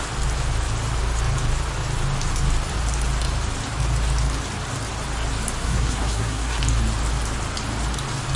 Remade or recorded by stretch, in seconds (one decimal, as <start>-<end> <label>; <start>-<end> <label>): 0.0-5.6 recorded; 5.6-6.6 remade; 6.6-8.4 recorded